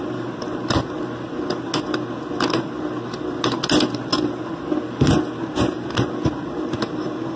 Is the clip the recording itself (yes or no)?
yes